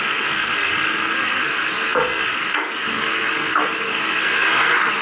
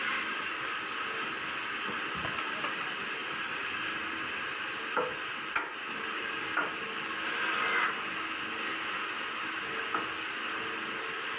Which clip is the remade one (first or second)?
first